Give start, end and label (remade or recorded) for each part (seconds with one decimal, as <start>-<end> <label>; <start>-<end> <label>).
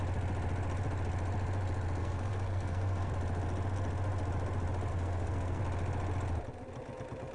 0.0-2.0 recorded; 2.0-3.1 remade; 3.1-4.9 recorded; 4.9-5.6 remade; 5.6-7.3 recorded